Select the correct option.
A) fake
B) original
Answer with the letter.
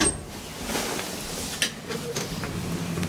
B